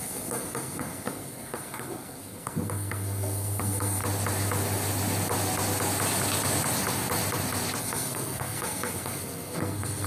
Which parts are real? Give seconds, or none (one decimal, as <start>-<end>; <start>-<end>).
4.0-7.8